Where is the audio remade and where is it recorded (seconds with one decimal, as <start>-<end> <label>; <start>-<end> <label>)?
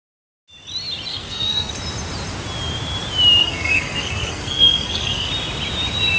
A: 0.0-1.1 recorded; 1.1-1.7 remade; 1.7-3.4 recorded; 3.4-5.3 remade; 5.3-6.2 recorded